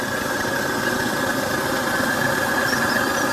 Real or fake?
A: real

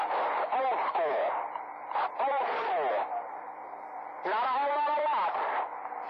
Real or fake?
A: fake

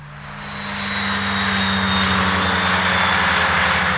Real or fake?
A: real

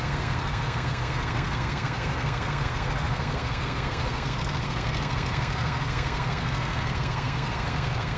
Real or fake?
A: fake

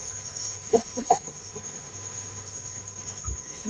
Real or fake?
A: fake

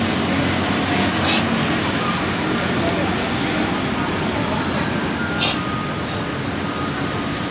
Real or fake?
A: real